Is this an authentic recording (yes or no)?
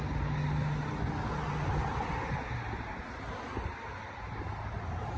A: yes